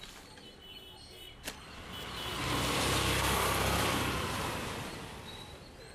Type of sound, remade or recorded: remade